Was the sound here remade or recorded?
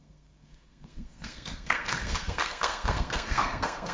remade